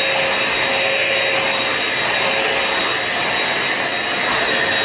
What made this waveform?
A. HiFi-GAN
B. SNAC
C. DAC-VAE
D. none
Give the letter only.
D